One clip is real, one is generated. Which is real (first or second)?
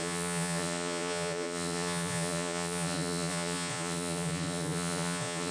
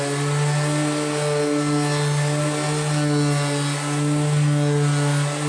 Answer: second